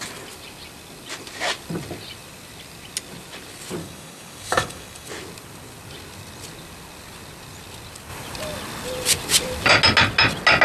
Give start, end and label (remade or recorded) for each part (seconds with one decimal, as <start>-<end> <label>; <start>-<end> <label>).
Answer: 0.0-3.8 recorded; 3.8-5.1 remade; 5.1-10.6 recorded